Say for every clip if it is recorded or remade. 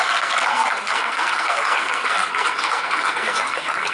remade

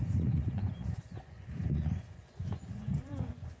remade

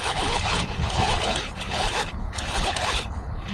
remade